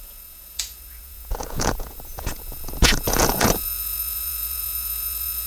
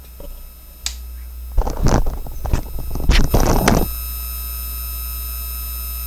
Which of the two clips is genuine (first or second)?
second